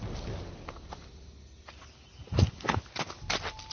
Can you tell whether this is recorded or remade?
recorded